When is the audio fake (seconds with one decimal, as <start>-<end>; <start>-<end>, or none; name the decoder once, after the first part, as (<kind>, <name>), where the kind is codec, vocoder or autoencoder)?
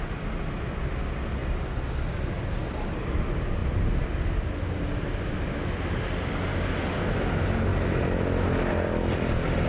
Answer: none